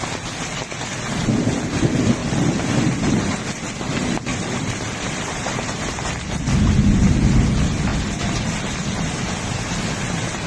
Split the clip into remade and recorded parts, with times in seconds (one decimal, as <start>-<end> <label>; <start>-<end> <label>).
0.0-2.2 recorded; 2.2-3.1 remade; 3.1-4.3 recorded; 4.3-5.2 remade; 5.2-6.5 recorded; 6.5-7.1 remade; 7.1-7.9 recorded; 7.9-9.2 remade; 9.2-10.5 recorded

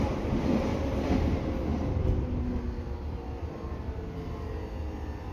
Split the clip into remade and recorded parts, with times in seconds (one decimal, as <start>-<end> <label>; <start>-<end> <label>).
0.0-5.3 recorded

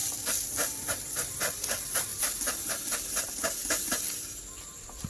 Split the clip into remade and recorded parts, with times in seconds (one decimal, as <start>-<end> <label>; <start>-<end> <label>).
0.0-1.3 remade; 1.3-2.1 recorded; 2.1-2.7 remade; 2.7-5.1 recorded

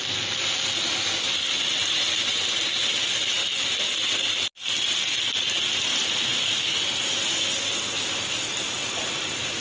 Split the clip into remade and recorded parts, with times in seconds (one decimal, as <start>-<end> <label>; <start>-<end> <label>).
0.0-1.8 recorded; 1.8-2.6 remade; 2.6-9.6 recorded

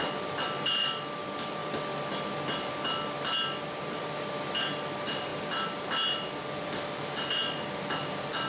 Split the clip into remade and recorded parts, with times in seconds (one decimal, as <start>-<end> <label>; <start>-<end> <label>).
0.0-8.5 recorded

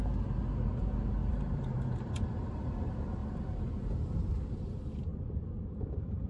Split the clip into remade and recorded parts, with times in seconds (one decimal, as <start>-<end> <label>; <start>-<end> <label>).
0.0-1.2 recorded; 1.2-2.7 remade; 2.7-5.1 recorded; 5.1-6.3 remade

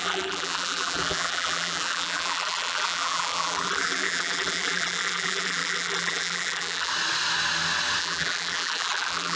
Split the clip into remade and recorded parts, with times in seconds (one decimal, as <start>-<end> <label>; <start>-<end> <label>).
0.0-6.9 remade; 6.9-8.0 recorded; 8.0-9.4 remade

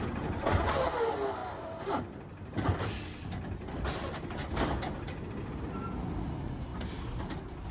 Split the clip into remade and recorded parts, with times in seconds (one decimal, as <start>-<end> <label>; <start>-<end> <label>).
0.0-7.7 recorded